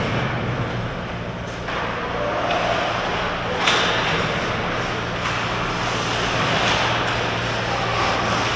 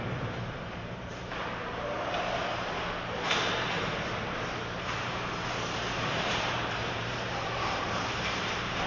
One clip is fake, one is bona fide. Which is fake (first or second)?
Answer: second